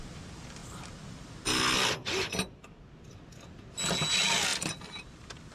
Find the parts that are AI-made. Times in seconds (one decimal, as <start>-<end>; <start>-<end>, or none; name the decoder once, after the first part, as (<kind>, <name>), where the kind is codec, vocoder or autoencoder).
none